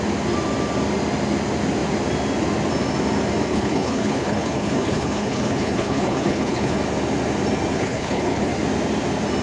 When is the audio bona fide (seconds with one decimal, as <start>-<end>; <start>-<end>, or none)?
0.0-3.5; 6.8-7.7; 8.5-9.4